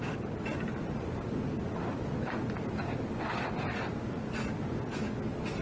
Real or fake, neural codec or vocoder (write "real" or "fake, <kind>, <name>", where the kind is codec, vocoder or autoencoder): real